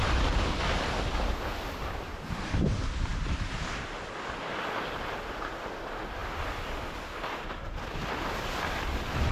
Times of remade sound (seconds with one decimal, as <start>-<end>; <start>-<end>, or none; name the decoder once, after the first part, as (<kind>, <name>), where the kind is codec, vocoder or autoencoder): none